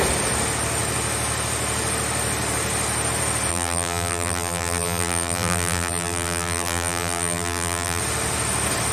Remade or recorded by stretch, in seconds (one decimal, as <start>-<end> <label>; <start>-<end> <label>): 0.0-3.5 recorded; 3.5-8.0 remade; 8.0-8.9 recorded